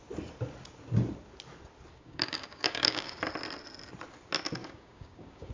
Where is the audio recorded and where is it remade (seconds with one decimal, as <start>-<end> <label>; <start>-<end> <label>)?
0.0-1.9 recorded; 1.9-3.2 remade; 3.2-4.6 recorded; 4.6-5.5 remade

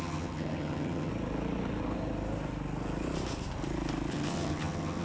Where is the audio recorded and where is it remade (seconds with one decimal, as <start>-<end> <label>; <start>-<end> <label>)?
0.0-1.1 remade; 1.1-4.1 recorded; 4.1-5.0 remade

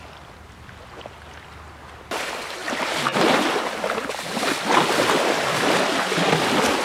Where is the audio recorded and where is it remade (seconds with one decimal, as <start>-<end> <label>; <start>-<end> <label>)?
0.0-6.8 recorded

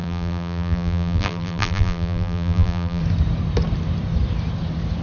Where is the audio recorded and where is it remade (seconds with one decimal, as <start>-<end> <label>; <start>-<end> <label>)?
0.0-3.0 remade; 3.0-5.0 recorded

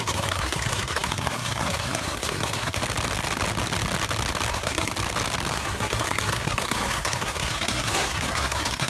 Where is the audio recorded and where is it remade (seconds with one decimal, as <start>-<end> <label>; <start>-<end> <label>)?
0.0-2.8 remade; 2.8-4.5 recorded; 4.5-4.9 remade; 4.9-5.5 recorded; 5.5-8.9 remade

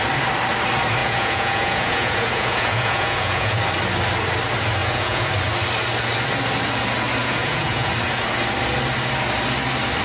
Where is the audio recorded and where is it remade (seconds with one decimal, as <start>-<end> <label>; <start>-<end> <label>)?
0.0-1.0 recorded; 1.0-3.6 remade; 3.6-4.8 recorded; 4.8-5.3 remade; 5.3-7.2 recorded; 7.2-7.9 remade; 7.9-10.0 recorded

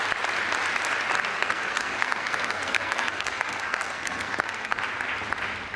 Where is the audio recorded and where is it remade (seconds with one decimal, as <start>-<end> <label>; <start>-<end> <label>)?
0.0-1.3 recorded; 1.3-4.8 remade; 4.8-5.8 recorded